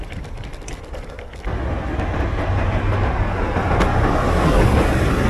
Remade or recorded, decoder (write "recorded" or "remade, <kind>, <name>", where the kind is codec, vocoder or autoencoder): recorded